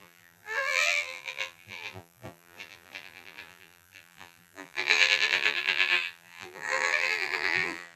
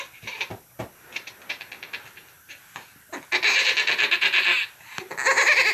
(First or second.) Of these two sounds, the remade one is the first